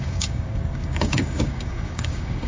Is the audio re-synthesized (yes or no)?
yes